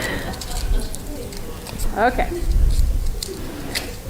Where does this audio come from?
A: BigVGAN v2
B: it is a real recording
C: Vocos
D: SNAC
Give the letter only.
B